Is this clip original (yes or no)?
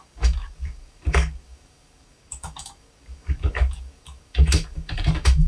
no